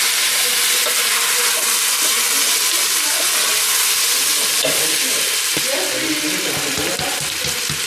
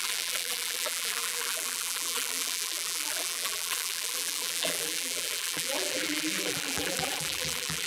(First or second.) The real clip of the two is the first